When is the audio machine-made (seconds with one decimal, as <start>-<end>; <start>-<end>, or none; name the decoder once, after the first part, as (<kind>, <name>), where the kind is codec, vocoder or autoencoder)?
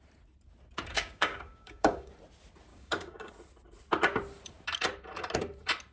0.9-2.1 (codec, DAC); 2.7-3.3